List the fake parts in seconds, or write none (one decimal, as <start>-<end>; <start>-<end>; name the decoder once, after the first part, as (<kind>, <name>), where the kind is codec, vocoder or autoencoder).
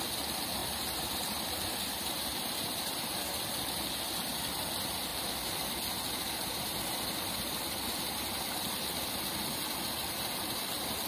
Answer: 0.6-3.5 (vocoder, BigVGAN v2)